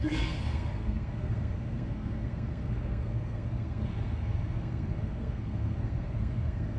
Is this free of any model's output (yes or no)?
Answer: no